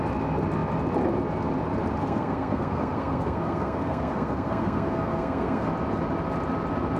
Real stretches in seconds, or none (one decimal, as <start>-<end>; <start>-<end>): 0.0-2.0; 5.7-7.0